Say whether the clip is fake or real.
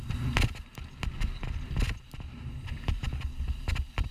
real